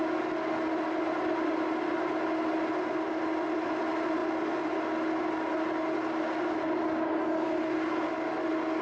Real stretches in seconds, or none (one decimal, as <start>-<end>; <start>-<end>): 0.0-8.8